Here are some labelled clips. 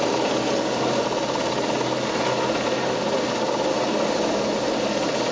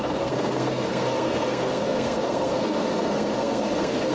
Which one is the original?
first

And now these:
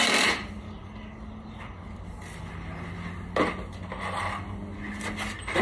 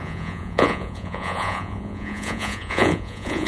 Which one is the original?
first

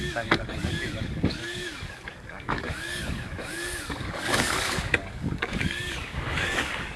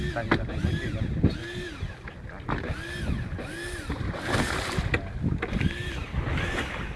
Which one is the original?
second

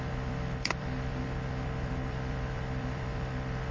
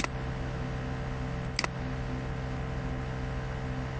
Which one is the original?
second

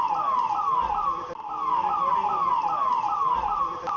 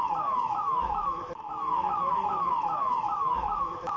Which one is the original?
first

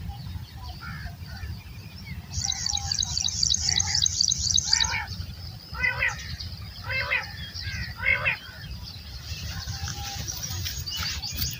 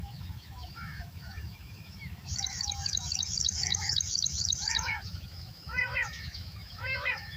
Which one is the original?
first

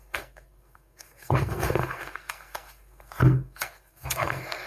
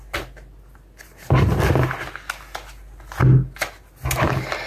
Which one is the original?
second